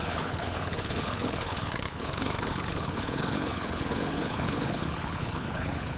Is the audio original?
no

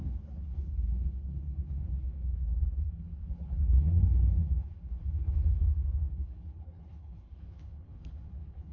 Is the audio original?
no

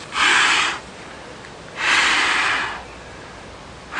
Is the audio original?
yes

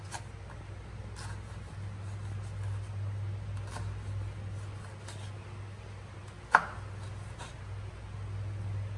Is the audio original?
yes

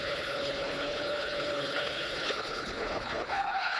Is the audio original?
no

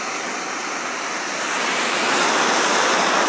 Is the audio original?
yes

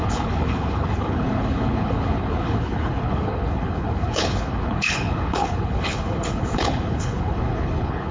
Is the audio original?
no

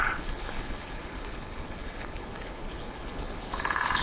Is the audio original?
no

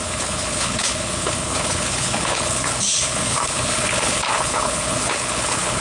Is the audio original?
no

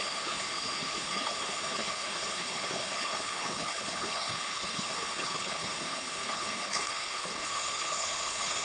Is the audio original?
no